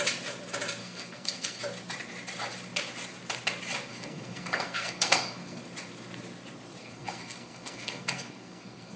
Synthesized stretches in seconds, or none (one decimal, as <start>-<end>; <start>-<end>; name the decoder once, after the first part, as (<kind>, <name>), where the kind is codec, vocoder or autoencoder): 0.8-1.6 (codec, SNAC); 3.9-5.6; 6.8-9.0

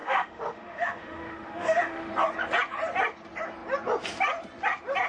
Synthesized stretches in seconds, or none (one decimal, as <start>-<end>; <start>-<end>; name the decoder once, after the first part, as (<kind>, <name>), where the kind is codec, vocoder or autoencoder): 0.0-2.1 (autoencoder, DAC-VAE)

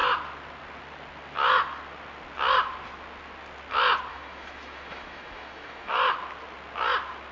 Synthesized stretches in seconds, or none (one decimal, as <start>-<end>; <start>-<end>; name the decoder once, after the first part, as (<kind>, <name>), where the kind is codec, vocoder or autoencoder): 4.1-5.9 (autoencoder, DAC-VAE)

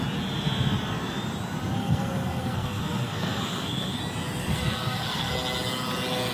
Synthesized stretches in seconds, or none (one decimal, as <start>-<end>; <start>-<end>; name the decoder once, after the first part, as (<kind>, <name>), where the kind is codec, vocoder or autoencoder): 1.8-4.0 (codec, SNAC); 4.4-5.3

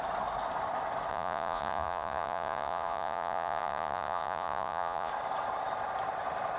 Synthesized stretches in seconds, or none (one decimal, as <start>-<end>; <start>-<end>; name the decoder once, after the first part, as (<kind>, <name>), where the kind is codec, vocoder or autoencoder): 1.1-5.1 (vocoder, Vocos)

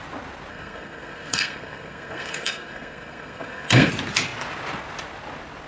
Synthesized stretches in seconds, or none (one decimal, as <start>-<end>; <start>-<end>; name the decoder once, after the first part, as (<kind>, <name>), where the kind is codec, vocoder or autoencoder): 0.5-3.9 (codec, SNAC)

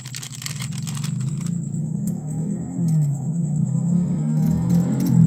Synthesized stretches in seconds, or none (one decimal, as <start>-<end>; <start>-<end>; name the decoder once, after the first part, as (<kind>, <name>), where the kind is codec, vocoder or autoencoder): 1.8-4.7 (codec, SNAC)